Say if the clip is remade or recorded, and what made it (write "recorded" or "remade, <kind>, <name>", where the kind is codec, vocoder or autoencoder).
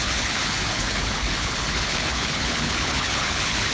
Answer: remade, codec, HILCodec